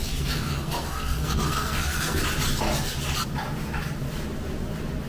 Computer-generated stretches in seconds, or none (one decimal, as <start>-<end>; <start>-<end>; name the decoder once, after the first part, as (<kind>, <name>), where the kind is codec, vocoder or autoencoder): 0.0-2.2 (codec, SNAC)